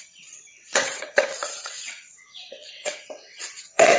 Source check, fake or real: fake